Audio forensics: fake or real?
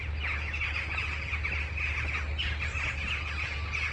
real